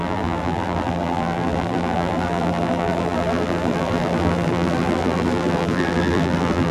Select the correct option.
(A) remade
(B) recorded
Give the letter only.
A